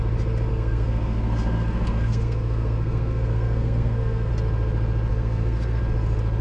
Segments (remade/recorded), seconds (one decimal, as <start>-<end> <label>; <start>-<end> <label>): 0.0-0.5 recorded; 0.5-4.3 remade; 4.3-5.1 recorded; 5.1-5.8 remade; 5.8-6.4 recorded